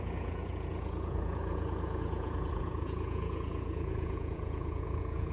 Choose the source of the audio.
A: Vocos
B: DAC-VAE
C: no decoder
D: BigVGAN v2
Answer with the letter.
A